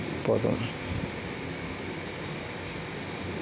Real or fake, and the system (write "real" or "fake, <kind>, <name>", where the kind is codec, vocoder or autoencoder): real